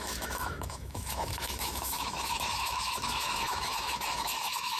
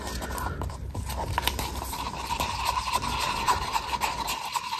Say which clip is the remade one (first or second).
first